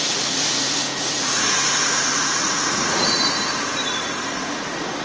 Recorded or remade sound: remade